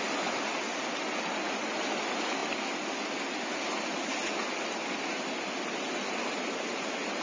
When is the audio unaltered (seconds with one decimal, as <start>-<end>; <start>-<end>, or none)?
0.0-7.2